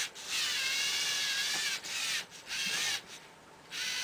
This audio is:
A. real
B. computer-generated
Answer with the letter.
A